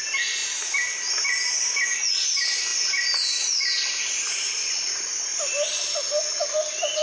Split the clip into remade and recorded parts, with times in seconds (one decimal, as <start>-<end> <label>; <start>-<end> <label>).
0.0-7.0 recorded